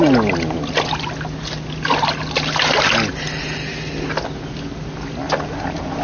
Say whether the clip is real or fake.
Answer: real